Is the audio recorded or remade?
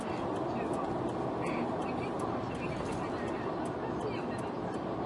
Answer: recorded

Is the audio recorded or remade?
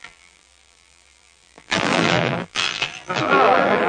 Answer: remade